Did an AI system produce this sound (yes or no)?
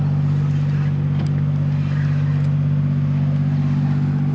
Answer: no